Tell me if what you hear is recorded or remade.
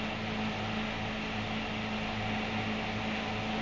recorded